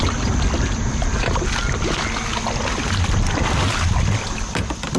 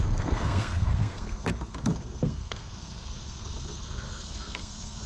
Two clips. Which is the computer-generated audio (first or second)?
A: second